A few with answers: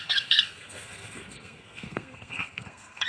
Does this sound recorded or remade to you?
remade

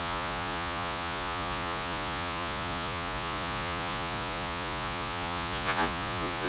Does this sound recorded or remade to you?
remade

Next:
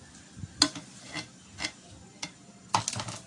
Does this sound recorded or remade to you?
recorded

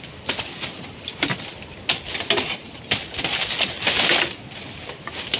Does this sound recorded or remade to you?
recorded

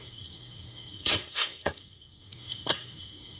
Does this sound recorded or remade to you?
remade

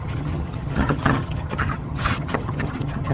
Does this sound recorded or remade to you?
remade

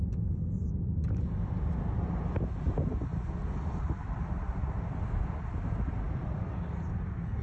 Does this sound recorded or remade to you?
recorded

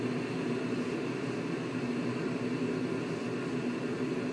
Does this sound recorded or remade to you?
recorded